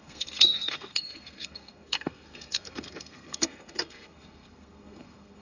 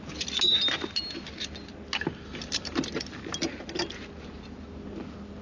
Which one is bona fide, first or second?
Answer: second